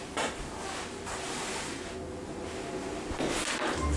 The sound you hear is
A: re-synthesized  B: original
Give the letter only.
B